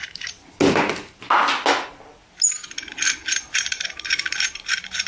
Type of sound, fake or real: real